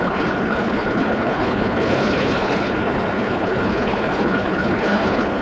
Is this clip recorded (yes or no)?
no